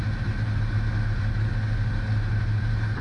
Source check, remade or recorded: recorded